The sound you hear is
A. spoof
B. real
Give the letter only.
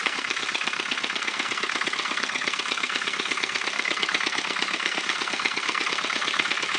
A